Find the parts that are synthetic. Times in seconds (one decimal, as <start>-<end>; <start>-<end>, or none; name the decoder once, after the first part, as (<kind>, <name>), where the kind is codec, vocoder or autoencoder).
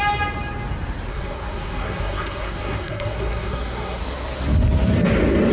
1.1-4.0 (codec, SNAC)